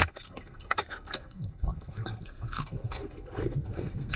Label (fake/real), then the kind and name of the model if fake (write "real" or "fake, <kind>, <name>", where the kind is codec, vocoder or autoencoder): fake, codec, SNAC